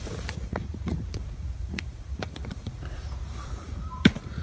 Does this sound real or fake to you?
fake